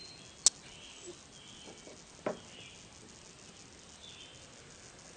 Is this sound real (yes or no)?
yes